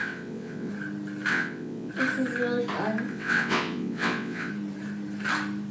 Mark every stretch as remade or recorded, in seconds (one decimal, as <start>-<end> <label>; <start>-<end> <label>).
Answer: 0.0-0.7 remade; 0.7-1.3 recorded; 1.3-1.9 remade; 1.9-3.1 recorded; 3.1-4.5 remade; 4.5-5.7 recorded